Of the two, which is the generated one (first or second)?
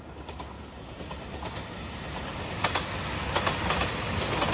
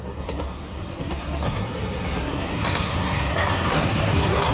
second